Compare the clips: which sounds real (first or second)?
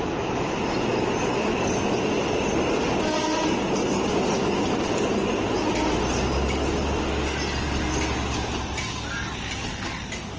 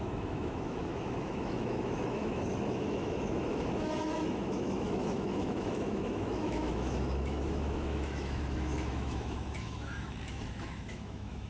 first